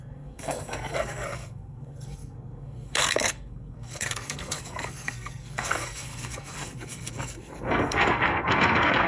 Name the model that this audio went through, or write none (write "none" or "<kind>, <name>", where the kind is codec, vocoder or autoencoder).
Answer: codec, SNAC